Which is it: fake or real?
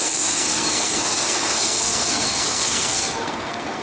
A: fake